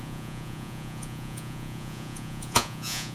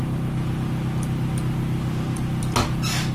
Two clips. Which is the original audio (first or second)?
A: second